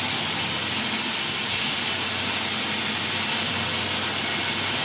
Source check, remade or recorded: recorded